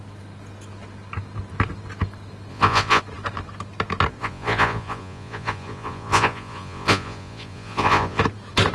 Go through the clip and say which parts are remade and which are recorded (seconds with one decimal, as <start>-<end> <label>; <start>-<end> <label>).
0.0-2.5 recorded; 2.5-3.0 remade; 3.0-4.2 recorded; 4.2-8.2 remade; 8.2-8.7 recorded